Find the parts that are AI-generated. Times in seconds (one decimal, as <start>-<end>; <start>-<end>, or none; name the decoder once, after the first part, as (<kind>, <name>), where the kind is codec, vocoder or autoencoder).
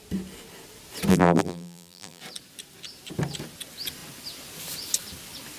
1.1-2.2 (vocoder, BigVGAN v2)